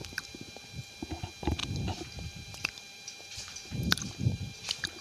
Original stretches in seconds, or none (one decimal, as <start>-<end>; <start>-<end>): 1.0-1.6; 4.6-5.0

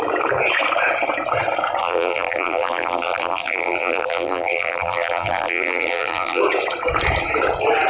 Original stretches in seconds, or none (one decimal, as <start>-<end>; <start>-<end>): 0.0-1.8; 6.4-7.9

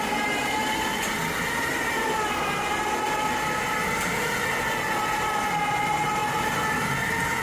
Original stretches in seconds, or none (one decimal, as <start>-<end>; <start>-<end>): 0.0-7.4

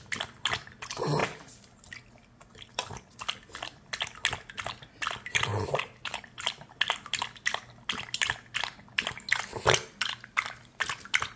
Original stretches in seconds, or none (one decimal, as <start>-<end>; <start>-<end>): 0.0-5.5; 6.2-11.4

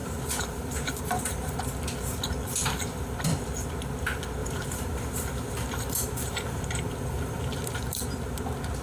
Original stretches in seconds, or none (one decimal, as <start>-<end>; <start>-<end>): 1.0-4.4; 8.0-8.8

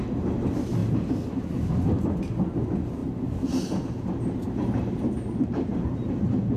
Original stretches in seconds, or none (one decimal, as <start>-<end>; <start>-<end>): 0.0-3.0; 6.1-6.6